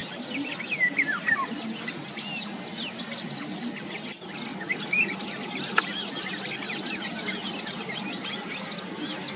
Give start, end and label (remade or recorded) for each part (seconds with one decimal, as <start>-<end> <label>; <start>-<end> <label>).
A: 0.0-9.4 recorded